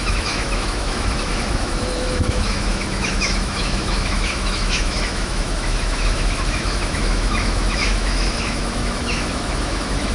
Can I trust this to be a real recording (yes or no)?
no